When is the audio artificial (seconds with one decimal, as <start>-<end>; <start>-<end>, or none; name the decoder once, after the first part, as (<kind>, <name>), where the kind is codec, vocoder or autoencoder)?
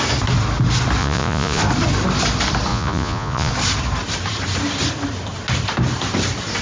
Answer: 1.0-1.6 (vocoder, Vocos); 2.7-3.5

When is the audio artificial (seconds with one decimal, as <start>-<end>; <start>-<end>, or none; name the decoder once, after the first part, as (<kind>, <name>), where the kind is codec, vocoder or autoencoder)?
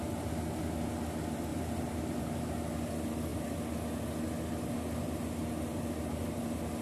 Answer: 1.5-2.2 (vocoder, BigVGAN v2)